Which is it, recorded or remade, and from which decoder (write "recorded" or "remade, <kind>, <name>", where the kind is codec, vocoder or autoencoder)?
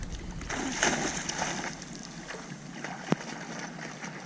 recorded